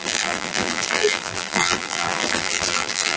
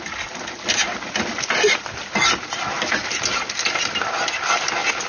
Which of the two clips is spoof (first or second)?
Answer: first